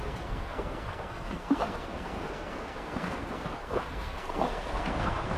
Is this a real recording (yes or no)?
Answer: no